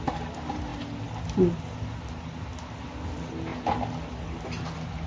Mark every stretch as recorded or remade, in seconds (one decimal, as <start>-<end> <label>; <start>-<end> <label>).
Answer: 0.0-5.1 recorded

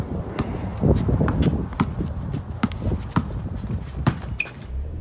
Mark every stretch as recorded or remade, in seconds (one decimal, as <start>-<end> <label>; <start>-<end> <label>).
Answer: 0.0-5.0 recorded

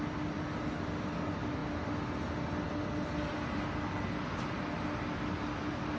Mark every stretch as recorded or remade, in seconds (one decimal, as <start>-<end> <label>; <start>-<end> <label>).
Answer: 0.0-6.0 recorded

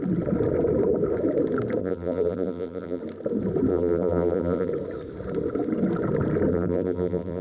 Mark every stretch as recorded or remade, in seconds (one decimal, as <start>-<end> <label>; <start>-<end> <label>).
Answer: 0.0-1.8 recorded; 1.8-3.0 remade; 3.0-3.7 recorded; 3.7-4.7 remade; 4.7-6.5 recorded; 6.5-7.4 remade

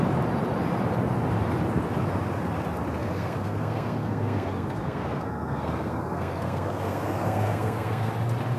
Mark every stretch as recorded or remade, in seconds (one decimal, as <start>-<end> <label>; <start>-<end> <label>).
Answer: 0.0-3.0 recorded; 3.0-8.1 remade; 8.1-8.6 recorded

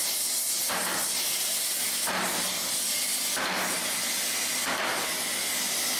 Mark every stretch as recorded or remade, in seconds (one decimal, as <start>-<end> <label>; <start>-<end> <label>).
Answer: 0.0-6.0 recorded